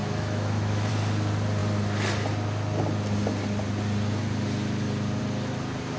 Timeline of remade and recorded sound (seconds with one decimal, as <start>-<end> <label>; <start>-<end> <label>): 0.0-0.9 remade; 0.9-6.0 recorded